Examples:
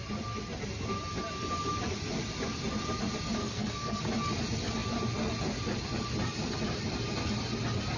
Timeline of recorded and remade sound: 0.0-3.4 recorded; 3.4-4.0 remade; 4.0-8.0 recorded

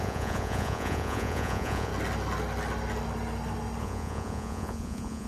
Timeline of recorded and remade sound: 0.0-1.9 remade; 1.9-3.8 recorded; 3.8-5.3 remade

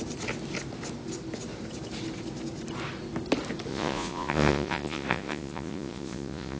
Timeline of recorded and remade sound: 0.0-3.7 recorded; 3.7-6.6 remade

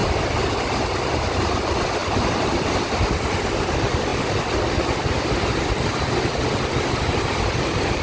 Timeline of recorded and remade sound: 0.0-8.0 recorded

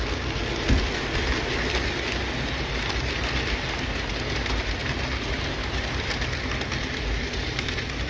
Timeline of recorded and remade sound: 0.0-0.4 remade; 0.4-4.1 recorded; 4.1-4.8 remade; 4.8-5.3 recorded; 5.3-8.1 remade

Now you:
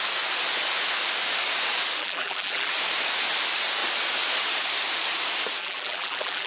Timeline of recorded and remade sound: 0.0-2.0 recorded; 2.0-2.7 remade; 2.7-5.6 recorded; 5.6-6.5 remade

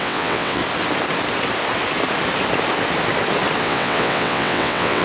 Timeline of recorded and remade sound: 0.0-0.6 remade; 0.6-3.6 recorded; 3.6-5.0 remade

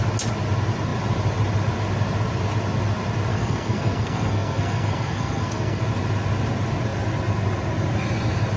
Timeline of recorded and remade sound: 0.0-3.3 recorded; 3.3-5.8 remade; 5.8-8.6 recorded